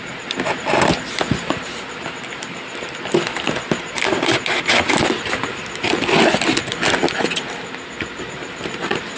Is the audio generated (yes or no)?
no